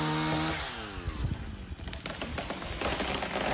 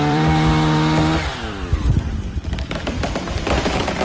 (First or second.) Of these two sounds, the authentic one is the first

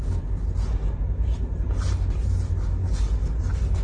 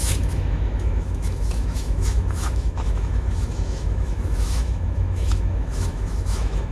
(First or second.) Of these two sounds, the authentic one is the first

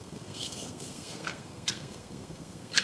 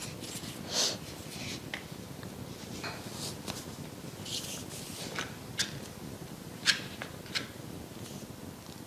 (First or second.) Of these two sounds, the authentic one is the second